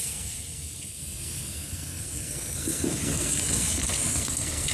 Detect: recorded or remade remade